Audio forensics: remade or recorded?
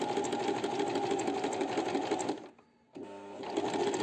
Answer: recorded